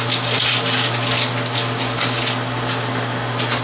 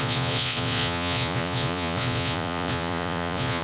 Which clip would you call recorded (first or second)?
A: first